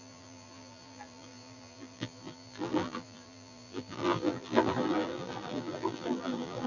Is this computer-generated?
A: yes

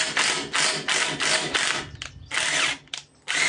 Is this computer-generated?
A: no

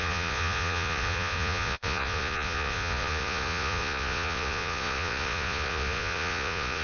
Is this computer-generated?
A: yes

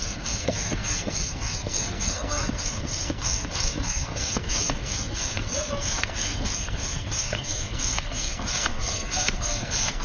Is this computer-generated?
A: yes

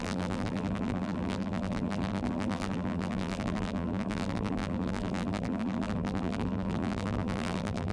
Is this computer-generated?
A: yes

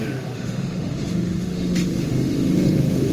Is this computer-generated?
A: yes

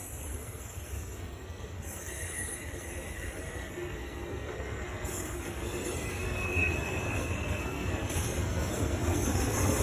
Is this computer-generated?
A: yes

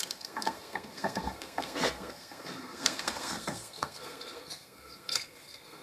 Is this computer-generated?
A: yes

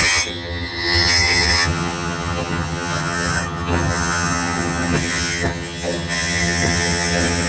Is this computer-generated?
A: yes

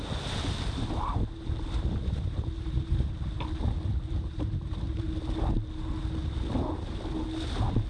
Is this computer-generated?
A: no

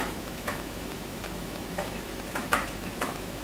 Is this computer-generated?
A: yes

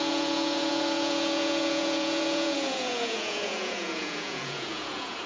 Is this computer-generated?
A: yes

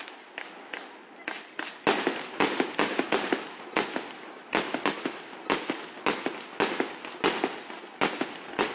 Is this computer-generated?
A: no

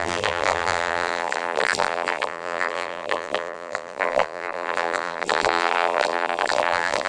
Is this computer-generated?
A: yes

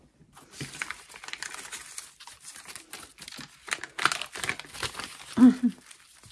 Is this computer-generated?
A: no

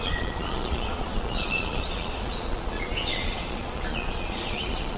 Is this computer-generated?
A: yes